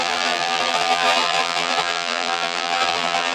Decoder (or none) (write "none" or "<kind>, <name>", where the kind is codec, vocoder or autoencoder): vocoder, BigVGAN v2